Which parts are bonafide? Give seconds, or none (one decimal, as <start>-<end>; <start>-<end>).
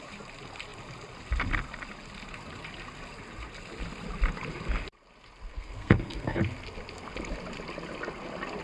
0.0-5.5; 6.4-8.6